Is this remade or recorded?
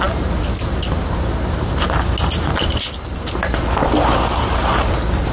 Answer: recorded